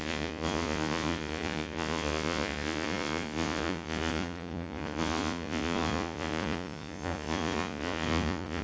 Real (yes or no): no